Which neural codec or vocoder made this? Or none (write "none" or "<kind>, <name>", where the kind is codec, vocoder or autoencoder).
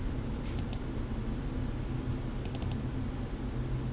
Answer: none